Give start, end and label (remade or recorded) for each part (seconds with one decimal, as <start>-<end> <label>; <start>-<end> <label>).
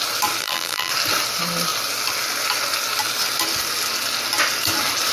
0.0-0.4 recorded; 0.4-0.9 remade; 0.9-5.1 recorded